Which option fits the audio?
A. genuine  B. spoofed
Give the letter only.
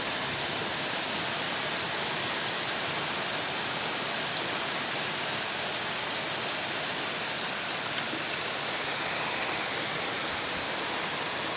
A